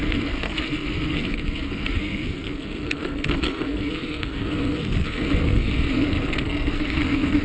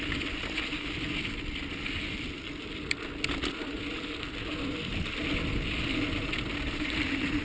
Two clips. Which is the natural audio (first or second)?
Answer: second